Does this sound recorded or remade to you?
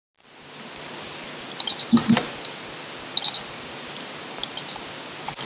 recorded